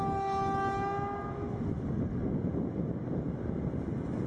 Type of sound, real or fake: real